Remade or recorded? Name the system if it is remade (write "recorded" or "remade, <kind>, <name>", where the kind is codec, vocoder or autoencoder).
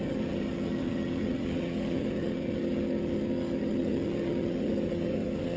remade, vocoder, HiFi-GAN